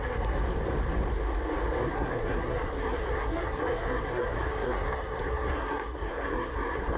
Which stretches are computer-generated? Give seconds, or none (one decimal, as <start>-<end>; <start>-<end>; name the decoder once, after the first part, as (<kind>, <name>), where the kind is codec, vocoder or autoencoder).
0.0-0.4 (codec, SNAC); 1.8-7.0